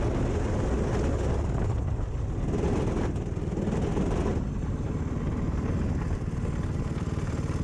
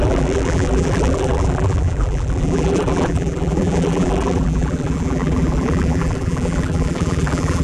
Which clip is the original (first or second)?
first